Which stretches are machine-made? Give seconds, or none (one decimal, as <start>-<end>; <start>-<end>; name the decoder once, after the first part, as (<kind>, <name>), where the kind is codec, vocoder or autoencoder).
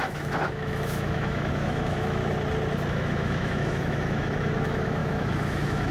0.0-2.2 (autoencoder, DAC-VAE); 2.9-5.9